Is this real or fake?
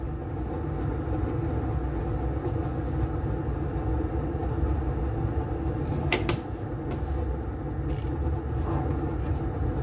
real